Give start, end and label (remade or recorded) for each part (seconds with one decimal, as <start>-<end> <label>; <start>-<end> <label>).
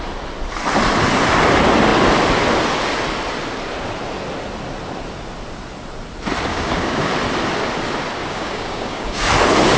0.0-6.5 recorded; 6.5-7.1 remade; 7.1-8.3 recorded; 8.3-9.3 remade; 9.3-9.8 recorded